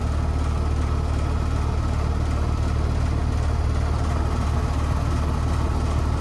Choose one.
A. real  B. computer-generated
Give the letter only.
A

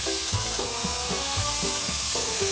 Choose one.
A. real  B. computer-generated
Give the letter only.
B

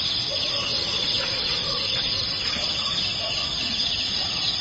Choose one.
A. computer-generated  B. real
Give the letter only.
B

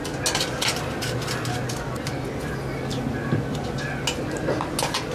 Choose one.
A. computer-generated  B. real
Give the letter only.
B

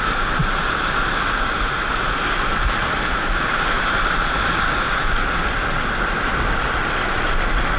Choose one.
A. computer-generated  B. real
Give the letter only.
B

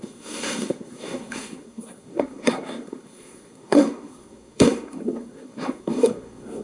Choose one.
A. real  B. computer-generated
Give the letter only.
B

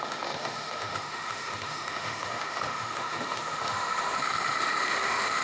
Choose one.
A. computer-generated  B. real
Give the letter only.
A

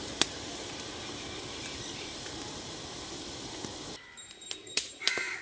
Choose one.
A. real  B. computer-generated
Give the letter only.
B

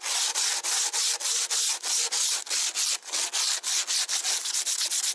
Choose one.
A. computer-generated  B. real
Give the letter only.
B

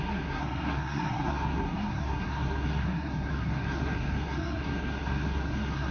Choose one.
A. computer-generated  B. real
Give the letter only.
A